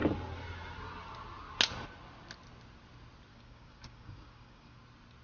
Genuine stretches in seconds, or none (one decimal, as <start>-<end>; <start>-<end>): 0.0-3.3; 4.8-5.2